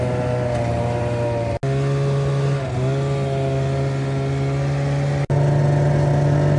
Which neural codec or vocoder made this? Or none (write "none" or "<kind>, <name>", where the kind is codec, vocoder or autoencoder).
none